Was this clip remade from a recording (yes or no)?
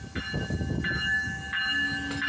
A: no